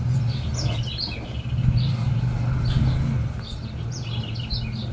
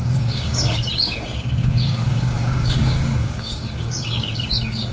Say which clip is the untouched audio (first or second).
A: first